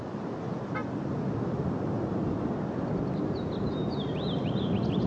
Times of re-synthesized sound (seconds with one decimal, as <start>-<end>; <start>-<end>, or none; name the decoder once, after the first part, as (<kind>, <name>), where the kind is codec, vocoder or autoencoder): none